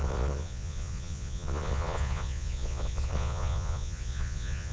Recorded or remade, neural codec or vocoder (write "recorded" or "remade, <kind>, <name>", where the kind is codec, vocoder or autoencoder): remade, vocoder, Vocos